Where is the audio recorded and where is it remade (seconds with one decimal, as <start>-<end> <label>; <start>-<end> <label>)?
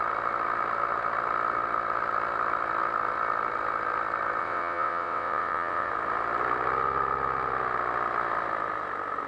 0.0-4.4 recorded; 4.4-5.9 remade; 5.9-9.3 recorded